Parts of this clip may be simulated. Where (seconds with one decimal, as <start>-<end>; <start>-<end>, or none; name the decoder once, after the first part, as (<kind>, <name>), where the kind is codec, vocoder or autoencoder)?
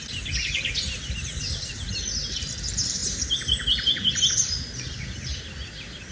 none